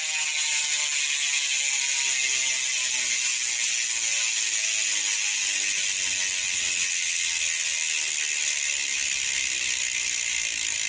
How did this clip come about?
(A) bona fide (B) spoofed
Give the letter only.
A